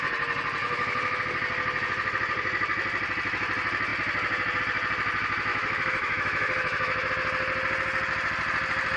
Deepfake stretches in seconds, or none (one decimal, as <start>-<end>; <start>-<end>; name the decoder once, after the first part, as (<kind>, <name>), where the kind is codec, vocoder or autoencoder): 0.6-1.2 (autoencoder, DAC-VAE); 5.5-7.1